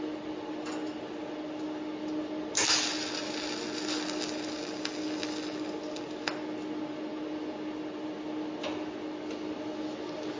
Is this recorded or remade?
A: recorded